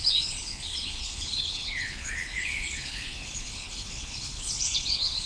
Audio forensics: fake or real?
fake